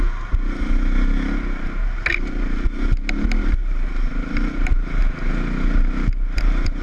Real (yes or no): yes